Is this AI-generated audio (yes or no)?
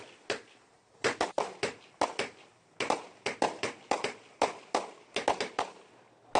no